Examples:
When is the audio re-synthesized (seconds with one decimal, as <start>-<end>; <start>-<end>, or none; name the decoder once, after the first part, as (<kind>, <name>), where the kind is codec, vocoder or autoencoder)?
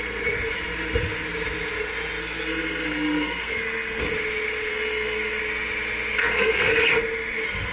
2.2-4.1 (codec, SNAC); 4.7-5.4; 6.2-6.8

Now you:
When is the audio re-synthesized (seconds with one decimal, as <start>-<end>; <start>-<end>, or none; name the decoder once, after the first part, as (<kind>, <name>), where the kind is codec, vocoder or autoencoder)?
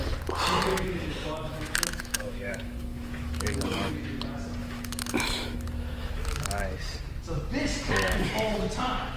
0.7-3.9 (autoencoder, DAC-VAE); 4.6-6.6; 7.7-8.3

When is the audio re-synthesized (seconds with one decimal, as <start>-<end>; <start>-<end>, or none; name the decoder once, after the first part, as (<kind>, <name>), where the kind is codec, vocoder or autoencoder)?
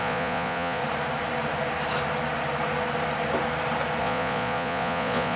0.0-0.8 (vocoder, Vocos); 4.0-5.4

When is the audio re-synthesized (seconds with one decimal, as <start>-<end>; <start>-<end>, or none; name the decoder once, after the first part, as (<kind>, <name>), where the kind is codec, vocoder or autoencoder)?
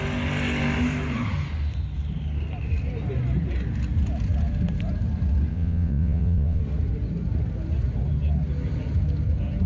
5.5-6.6 (vocoder, WaveNeXt)